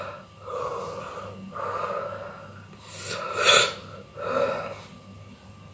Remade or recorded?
recorded